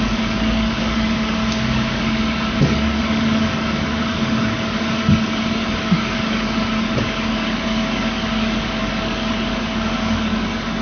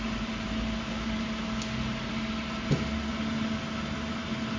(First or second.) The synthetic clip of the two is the first